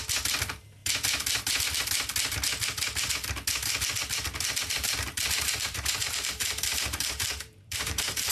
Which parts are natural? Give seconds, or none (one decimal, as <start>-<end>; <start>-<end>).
0.0-4.8